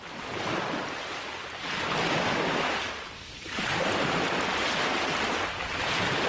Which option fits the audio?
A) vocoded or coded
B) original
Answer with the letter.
B